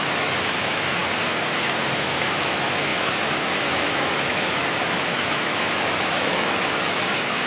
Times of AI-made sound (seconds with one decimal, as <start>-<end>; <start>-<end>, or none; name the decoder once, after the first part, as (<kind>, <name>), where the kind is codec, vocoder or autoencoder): 0.0-1.0 (autoencoder, DAC-VAE); 2.4-7.5